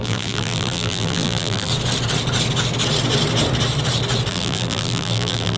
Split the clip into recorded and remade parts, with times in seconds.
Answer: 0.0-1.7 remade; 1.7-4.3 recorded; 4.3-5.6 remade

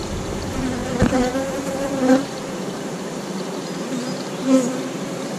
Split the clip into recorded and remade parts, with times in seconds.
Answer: 0.0-5.4 remade

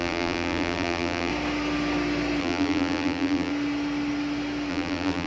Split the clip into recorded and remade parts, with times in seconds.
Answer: 0.0-1.3 remade; 1.3-2.4 recorded; 2.4-3.5 remade; 3.5-4.7 recorded; 4.7-5.3 remade

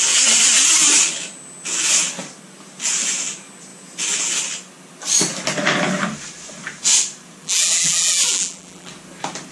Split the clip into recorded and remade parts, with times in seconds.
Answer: 0.0-7.4 recorded; 7.4-8.9 remade; 8.9-9.5 recorded

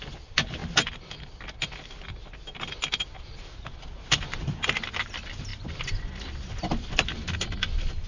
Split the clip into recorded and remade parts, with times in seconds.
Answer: 0.0-0.6 remade; 0.6-3.2 recorded; 3.2-8.1 remade